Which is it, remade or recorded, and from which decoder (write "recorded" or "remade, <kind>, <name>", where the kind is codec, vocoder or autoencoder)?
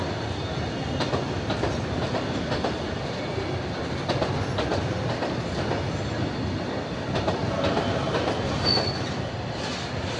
recorded